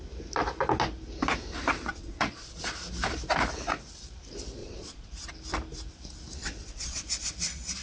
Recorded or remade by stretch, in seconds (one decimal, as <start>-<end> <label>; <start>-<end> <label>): 0.0-1.9 recorded; 1.9-2.6 remade; 2.6-4.6 recorded; 4.6-5.3 remade; 5.3-6.4 recorded; 6.4-7.3 remade; 7.3-7.8 recorded